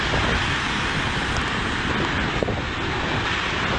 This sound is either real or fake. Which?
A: real